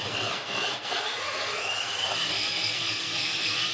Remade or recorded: remade